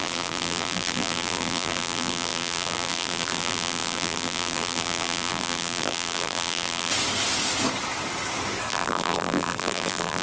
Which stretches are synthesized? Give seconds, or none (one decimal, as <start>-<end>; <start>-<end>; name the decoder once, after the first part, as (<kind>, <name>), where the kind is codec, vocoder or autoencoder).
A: 0.0-6.9 (vocoder, BigVGAN v2); 8.7-10.2